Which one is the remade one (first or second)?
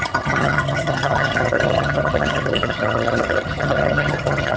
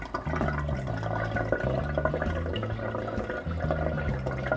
first